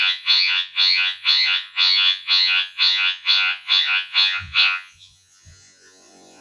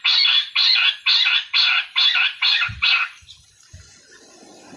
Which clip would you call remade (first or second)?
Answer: first